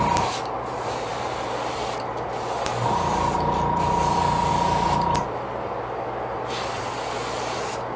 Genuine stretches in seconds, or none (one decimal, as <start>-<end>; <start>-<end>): 0.0-8.0